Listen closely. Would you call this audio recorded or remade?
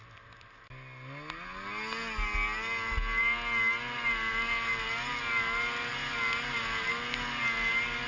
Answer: recorded